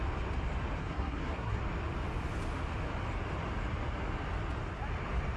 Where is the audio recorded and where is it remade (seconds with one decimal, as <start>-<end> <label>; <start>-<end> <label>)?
0.0-0.8 recorded; 0.8-1.6 remade; 1.6-5.4 recorded